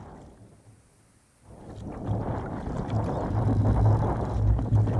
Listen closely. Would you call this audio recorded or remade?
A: recorded